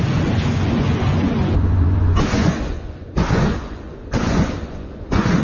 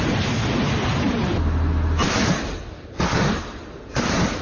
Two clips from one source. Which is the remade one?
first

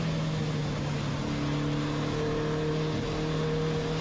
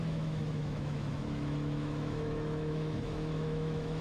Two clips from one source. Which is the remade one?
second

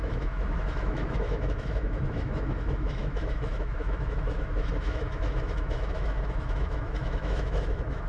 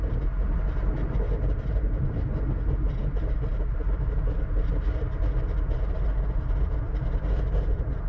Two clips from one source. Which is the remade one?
first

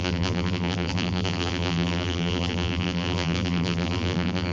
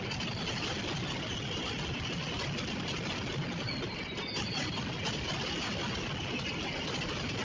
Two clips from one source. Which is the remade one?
first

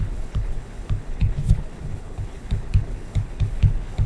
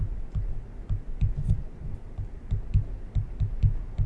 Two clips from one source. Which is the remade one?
first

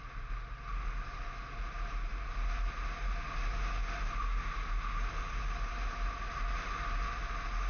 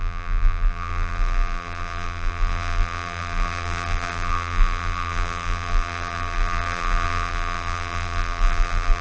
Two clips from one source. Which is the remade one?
second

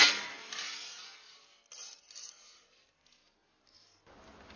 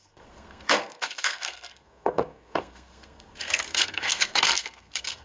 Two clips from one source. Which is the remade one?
second